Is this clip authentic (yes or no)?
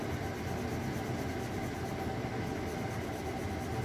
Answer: yes